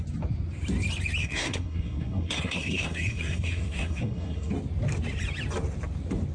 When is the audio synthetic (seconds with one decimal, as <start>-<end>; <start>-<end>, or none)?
1.2-4.5